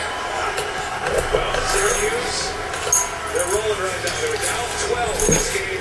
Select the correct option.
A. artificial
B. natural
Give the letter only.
B